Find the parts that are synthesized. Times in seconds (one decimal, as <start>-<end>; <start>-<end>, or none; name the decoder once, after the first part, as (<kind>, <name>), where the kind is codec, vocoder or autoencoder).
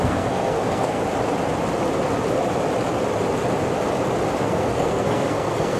0.0-1.0 (codec, SNAC); 4.4-5.8